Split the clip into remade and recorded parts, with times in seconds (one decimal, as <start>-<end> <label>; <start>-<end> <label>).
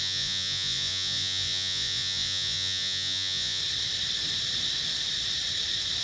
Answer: 0.0-3.6 remade; 3.6-6.0 recorded